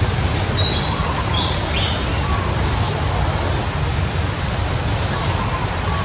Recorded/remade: recorded